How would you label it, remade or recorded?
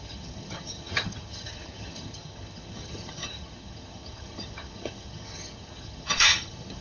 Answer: remade